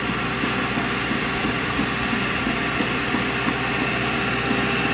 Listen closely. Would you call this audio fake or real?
real